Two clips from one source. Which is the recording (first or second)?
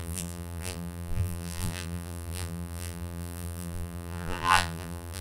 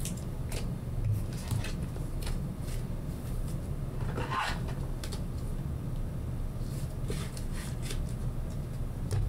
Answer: second